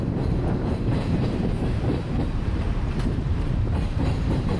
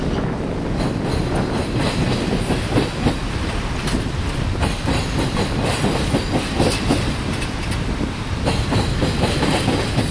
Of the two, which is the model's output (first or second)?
first